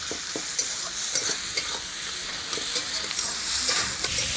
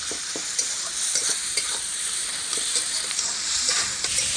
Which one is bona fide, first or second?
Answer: first